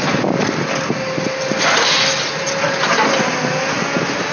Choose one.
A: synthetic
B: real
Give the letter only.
B